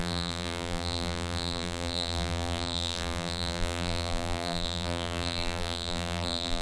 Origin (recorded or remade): remade